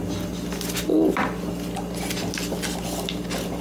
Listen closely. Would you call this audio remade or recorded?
recorded